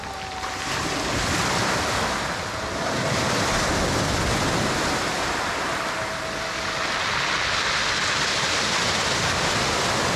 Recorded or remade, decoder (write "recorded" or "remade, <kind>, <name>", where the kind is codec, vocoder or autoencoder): recorded